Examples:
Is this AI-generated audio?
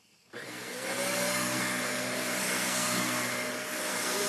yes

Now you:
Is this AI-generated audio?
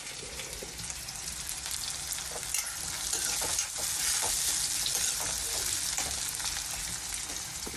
no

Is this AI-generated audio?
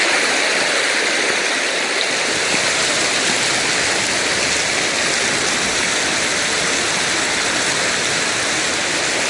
no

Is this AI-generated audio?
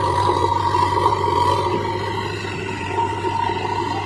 no